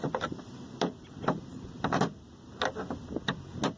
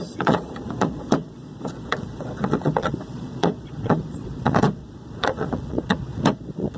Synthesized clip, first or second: second